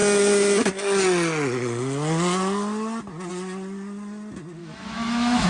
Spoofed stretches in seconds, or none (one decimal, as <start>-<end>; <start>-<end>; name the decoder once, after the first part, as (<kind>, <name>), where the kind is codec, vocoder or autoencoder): 4.6-5.5 (autoencoder, DAC-VAE)